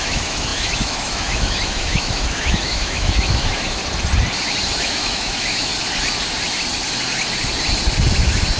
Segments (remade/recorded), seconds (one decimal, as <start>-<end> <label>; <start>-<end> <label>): 0.0-3.8 remade; 3.8-4.8 recorded; 4.8-5.7 remade; 5.7-8.6 recorded